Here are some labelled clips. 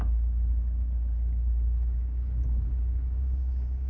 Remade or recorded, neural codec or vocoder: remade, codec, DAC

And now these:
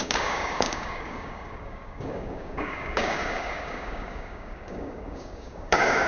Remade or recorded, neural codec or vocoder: remade, codec, DAC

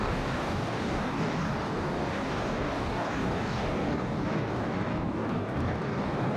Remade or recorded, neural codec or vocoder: remade, codec, DAC